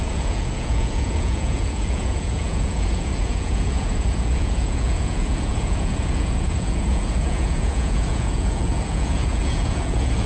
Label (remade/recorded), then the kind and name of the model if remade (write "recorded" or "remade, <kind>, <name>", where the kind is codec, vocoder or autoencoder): remade, vocoder, Vocos